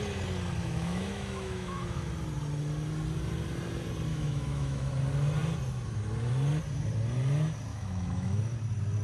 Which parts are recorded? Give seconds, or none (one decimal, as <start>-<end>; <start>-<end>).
0.0-0.6; 2.1-4.1; 4.9-7.7; 8.4-9.0